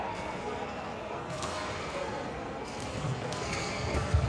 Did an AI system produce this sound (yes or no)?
yes